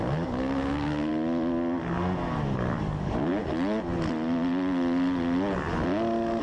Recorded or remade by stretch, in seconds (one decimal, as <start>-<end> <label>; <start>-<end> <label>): 0.0-1.1 remade; 1.1-2.8 recorded; 2.8-3.3 remade; 3.3-6.4 recorded